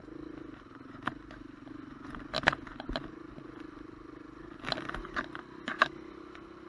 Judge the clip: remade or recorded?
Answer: recorded